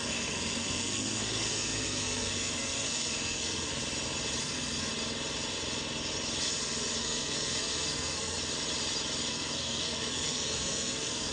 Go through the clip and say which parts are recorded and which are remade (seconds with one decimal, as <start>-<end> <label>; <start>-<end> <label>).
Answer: 0.0-3.8 remade; 3.8-4.4 recorded; 4.4-4.9 remade; 4.9-7.0 recorded; 7.0-8.4 remade; 8.4-9.3 recorded; 9.3-11.3 remade